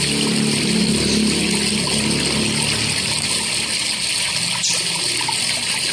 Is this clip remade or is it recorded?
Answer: recorded